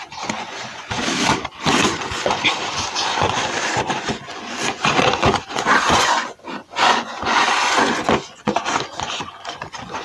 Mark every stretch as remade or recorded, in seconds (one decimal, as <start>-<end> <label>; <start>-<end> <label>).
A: 0.0-1.0 remade; 1.0-1.7 recorded; 1.7-10.0 remade